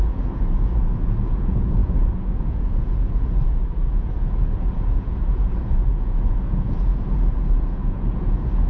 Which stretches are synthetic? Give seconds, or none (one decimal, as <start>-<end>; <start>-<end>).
0.0-8.7